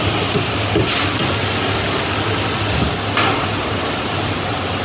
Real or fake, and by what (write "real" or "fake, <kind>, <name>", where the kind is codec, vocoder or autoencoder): real